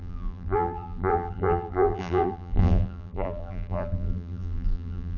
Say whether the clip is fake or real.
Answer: fake